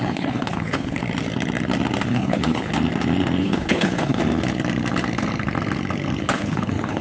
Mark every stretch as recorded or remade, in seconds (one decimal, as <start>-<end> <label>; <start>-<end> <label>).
0.0-1.0 remade; 1.0-2.1 recorded; 2.1-2.7 remade; 2.7-3.4 recorded; 3.4-4.2 remade; 4.2-6.2 recorded; 6.2-7.0 remade